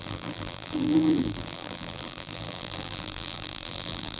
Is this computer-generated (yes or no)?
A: yes